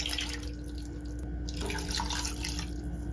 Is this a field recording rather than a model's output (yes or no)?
yes